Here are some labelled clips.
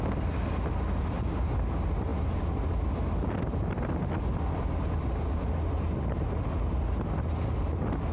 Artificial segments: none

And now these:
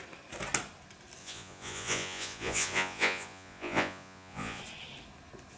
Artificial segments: 1.2-4.6 (vocoder, Vocos)

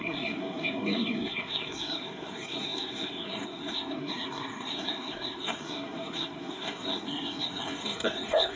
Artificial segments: 0.0-8.6 (codec, SNAC)

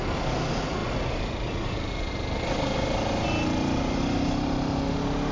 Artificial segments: none

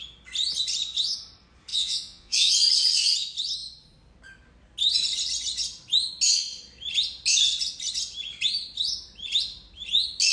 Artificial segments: 1.7-2.5 (vocoder, Vocos)

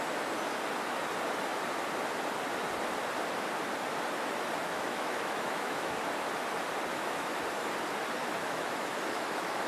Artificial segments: 4.6-6.0 (autoencoder, DAC-VAE); 6.9-7.4; 8.2-9.7

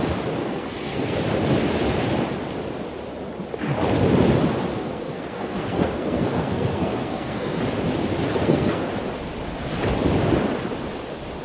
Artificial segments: 0.4-1.2 (codec, SNAC); 4.7-7.6; 8.3-8.8